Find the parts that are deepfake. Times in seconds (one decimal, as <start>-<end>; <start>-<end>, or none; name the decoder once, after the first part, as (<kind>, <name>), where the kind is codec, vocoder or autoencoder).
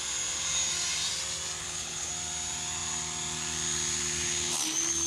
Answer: 1.6-2.1 (codec, HILCodec)